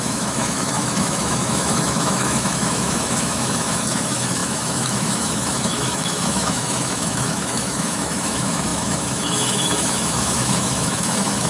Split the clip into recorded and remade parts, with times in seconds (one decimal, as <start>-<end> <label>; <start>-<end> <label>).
0.0-11.5 remade